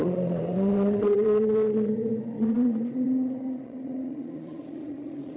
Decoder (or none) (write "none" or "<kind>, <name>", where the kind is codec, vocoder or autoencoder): vocoder, Vocos